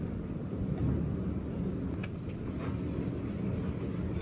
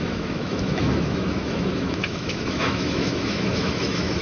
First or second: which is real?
first